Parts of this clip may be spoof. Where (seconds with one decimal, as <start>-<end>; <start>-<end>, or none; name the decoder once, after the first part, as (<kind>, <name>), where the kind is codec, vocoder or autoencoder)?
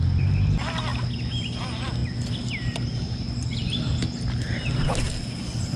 none